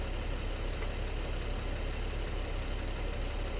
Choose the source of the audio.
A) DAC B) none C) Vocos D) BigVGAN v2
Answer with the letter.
B